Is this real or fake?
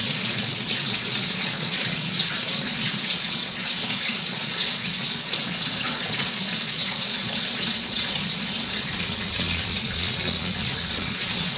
fake